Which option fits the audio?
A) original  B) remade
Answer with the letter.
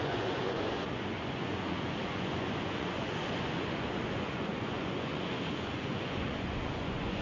B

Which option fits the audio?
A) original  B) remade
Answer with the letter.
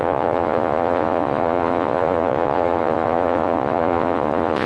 B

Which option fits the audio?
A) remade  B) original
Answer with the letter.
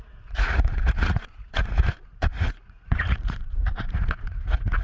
A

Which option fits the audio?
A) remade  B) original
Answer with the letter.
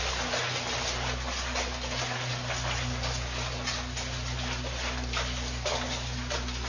B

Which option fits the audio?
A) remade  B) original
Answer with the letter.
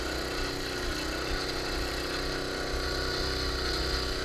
B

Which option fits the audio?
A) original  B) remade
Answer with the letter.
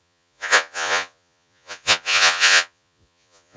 B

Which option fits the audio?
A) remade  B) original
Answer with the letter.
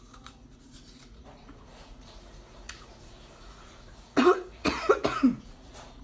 A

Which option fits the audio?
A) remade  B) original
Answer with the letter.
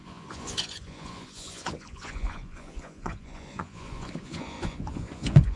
A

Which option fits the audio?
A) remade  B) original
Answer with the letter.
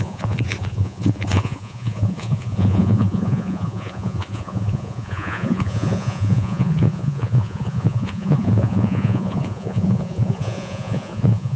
A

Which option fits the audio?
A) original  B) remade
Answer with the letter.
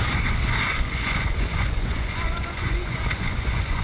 B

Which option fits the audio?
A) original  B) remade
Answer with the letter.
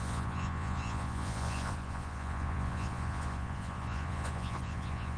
B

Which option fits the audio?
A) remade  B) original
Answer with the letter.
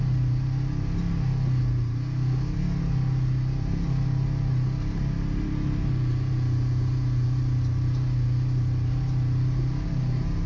B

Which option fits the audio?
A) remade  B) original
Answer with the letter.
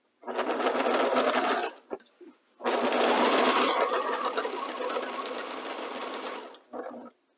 B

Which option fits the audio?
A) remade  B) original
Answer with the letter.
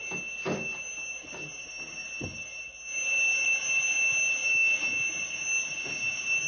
B